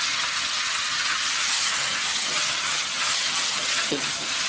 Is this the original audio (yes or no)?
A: no